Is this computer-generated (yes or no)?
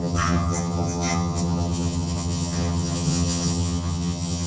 yes